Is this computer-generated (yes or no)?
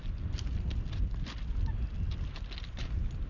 no